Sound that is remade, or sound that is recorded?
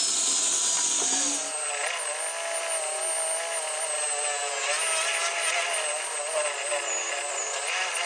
recorded